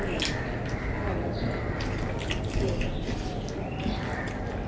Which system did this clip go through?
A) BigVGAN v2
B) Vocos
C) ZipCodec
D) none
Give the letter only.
D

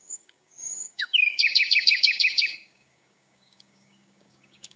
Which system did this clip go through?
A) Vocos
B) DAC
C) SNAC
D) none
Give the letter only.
B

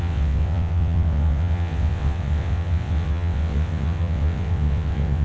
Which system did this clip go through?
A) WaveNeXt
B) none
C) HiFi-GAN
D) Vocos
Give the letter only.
A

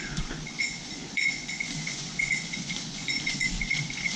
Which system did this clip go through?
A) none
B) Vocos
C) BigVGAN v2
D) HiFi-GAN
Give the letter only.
B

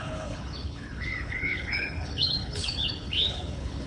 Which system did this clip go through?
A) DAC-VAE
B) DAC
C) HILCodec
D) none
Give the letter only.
C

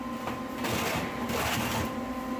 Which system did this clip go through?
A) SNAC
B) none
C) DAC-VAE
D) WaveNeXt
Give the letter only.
B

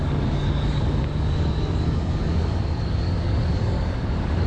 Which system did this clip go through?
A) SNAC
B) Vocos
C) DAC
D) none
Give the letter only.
C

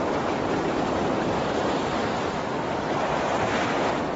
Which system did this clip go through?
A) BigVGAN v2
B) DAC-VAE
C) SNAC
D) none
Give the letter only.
A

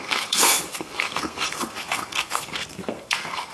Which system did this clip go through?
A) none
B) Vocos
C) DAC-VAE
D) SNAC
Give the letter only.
D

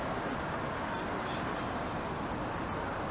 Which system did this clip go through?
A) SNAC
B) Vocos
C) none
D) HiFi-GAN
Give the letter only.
C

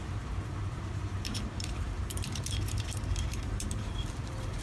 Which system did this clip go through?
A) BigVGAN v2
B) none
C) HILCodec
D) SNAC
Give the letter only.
A